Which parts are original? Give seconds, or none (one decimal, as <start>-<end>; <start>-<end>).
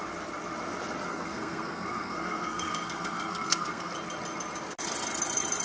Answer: 0.0-1.1; 3.9-5.6